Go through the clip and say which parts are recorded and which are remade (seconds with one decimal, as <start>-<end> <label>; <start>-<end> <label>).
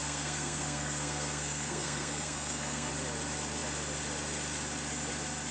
0.0-2.9 remade; 2.9-5.5 recorded